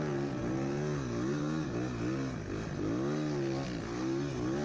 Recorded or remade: recorded